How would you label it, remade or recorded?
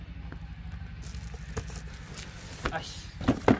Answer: recorded